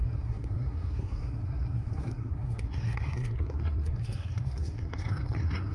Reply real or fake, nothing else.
fake